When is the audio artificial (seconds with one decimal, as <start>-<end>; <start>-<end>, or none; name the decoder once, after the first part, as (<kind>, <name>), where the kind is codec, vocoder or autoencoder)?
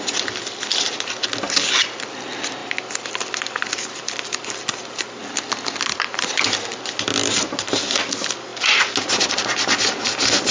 none